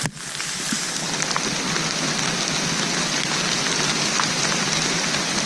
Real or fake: real